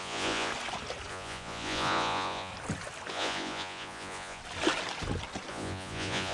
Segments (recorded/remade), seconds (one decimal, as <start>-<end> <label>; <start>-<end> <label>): 0.0-0.5 remade; 0.5-1.1 recorded; 1.1-2.5 remade; 2.5-3.1 recorded; 3.1-4.4 remade; 4.4-5.5 recorded; 5.5-6.3 remade